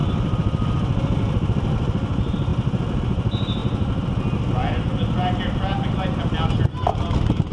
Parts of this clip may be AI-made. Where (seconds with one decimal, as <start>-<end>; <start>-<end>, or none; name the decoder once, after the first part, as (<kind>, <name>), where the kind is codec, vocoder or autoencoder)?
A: none